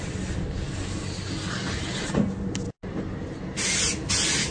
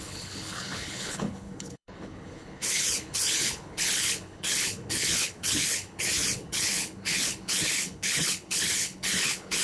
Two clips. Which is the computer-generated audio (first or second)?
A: second